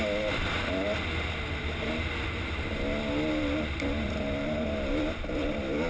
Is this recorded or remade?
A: recorded